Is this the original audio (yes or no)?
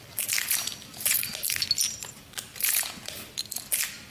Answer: no